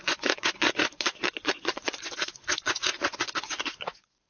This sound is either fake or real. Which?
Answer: fake